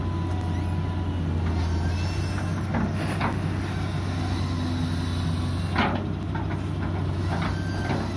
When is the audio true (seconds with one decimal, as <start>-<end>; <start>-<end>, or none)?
0.0-8.2